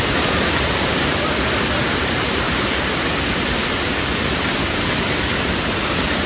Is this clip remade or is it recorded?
remade